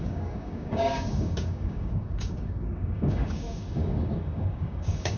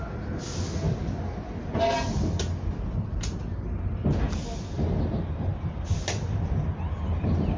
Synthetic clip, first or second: first